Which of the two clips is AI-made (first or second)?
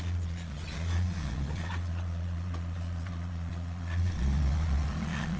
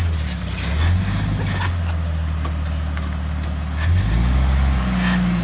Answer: first